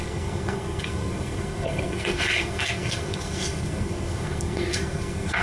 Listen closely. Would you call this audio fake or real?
fake